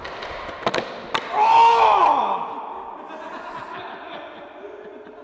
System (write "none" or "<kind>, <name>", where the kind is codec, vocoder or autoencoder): none